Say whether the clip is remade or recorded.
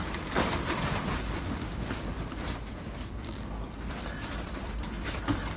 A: remade